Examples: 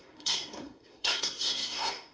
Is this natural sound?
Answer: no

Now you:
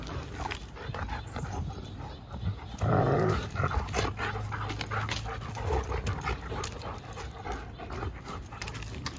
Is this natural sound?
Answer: yes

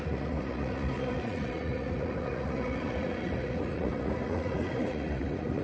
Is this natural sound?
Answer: no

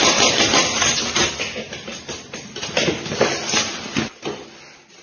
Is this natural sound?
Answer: yes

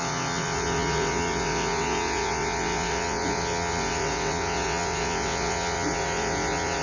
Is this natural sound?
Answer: no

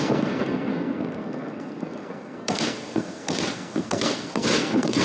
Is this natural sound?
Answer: no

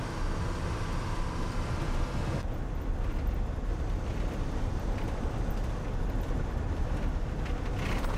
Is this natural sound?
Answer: yes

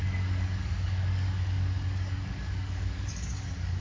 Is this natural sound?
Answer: no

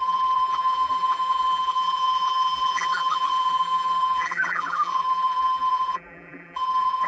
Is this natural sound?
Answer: no